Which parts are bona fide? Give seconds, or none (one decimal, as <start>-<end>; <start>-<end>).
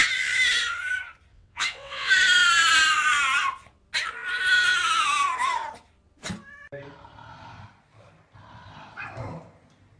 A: 0.0-1.3; 2.1-10.0